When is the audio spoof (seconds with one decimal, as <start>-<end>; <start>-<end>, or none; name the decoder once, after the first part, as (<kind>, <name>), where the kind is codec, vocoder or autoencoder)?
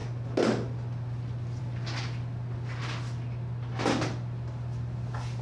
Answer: none